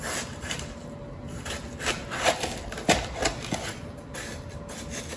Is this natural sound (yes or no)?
yes